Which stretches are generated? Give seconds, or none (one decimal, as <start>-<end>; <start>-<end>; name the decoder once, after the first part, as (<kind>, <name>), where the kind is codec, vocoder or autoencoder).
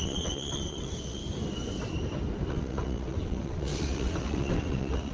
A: 0.0-1.2 (vocoder, WaveNeXt); 2.5-5.1